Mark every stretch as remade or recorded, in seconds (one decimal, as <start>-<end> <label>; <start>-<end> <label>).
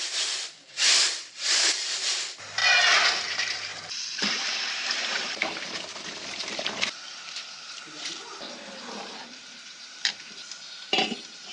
0.0-2.6 remade; 2.6-3.3 recorded; 3.3-3.7 remade; 3.7-4.3 recorded; 4.3-11.5 remade